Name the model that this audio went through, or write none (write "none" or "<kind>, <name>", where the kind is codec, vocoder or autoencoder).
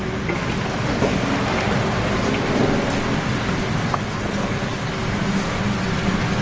none